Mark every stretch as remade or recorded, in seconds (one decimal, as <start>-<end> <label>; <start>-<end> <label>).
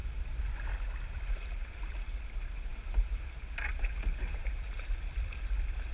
0.0-5.9 recorded